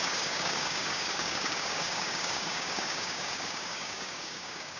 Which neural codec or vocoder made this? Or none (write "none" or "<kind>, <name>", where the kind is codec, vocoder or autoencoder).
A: codec, DAC